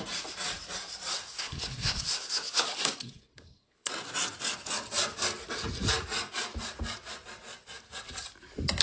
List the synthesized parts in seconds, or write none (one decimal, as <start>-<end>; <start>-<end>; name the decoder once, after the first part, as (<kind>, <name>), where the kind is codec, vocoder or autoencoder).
1.1-3.9 (codec, SNAC)